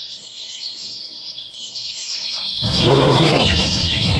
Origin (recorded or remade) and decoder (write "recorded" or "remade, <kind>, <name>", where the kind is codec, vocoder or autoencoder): remade, codec, SNAC